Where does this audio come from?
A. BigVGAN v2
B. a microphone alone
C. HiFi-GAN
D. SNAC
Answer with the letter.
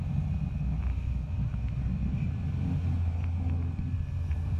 B